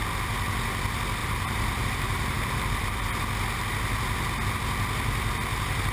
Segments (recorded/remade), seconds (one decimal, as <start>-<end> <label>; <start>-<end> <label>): 0.0-1.2 recorded; 1.2-3.0 remade; 3.0-5.9 recorded